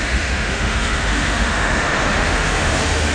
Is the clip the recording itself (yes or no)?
no